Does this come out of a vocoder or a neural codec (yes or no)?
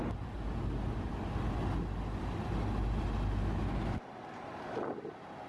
no